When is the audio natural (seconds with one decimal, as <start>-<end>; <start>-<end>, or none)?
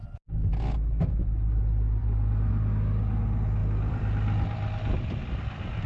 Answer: 0.0-2.0; 2.5-3.6; 5.2-5.9